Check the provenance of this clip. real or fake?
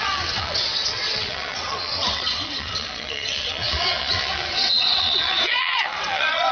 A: fake